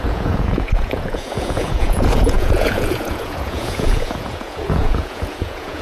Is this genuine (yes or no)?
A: no